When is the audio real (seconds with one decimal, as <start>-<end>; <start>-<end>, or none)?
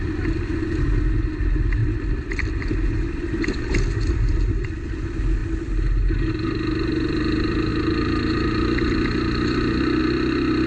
0.0-10.7